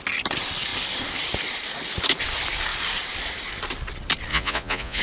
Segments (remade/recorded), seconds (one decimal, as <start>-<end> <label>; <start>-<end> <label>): 0.0-4.3 recorded; 4.3-5.0 remade